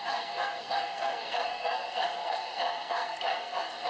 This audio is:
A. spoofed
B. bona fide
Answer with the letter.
A